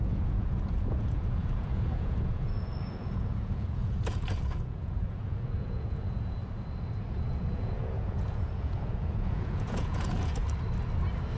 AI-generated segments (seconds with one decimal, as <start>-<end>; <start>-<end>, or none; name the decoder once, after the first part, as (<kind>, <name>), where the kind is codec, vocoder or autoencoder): 0.0-6.4 (vocoder, Vocos); 7.1-10.4